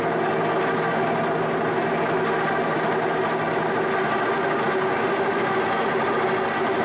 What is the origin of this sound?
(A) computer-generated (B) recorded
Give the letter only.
B